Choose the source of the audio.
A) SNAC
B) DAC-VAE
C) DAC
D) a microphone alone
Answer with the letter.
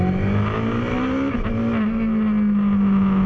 D